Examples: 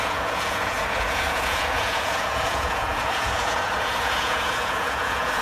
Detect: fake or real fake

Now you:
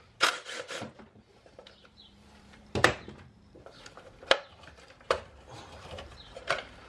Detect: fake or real fake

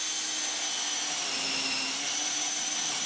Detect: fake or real real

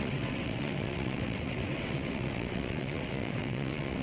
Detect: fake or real fake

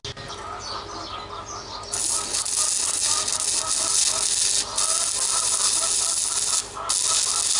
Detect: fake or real real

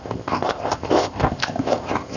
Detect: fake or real fake